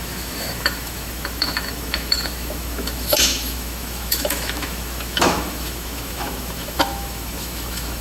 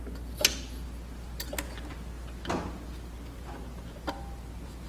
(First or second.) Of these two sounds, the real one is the second